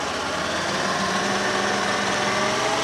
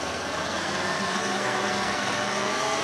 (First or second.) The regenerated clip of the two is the second